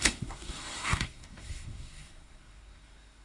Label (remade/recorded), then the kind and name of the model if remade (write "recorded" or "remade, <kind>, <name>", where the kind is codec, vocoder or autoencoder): remade, codec, SNAC